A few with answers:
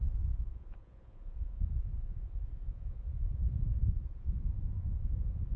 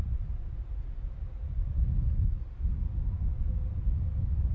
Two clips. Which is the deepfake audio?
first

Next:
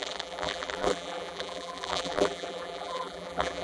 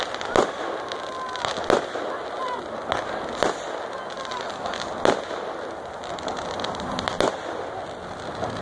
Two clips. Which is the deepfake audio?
first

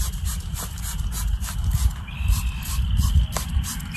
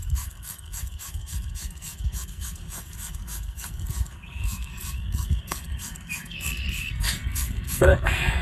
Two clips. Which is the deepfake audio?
second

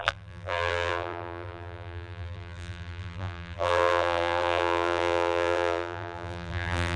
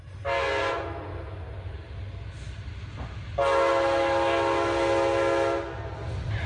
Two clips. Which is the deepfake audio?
first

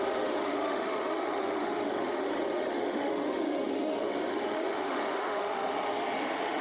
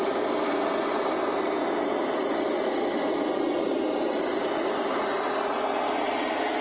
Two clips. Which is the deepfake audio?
first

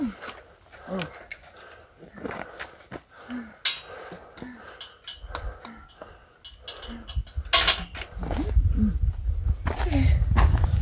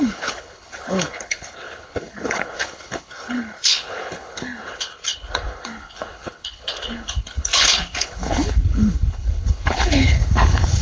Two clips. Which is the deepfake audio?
second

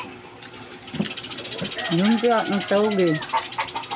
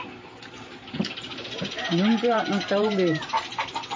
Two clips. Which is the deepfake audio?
second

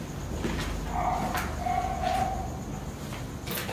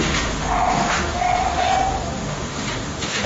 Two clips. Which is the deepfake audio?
second